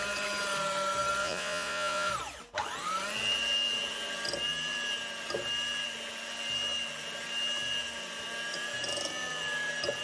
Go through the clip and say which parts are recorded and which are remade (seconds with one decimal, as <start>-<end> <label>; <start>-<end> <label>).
0.0-1.2 recorded; 1.2-2.1 remade; 2.1-10.0 recorded

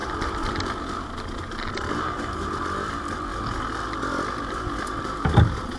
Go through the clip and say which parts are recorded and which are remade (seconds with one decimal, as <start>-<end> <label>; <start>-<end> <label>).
0.0-5.8 remade

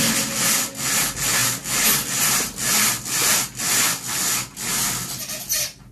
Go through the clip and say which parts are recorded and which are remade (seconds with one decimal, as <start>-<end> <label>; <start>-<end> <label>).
0.0-1.4 recorded; 1.4-3.6 remade; 3.6-5.9 recorded